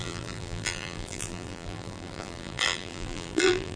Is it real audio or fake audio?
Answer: fake